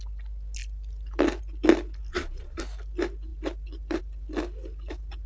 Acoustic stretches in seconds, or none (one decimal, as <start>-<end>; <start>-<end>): 0.0-2.1; 2.6-5.3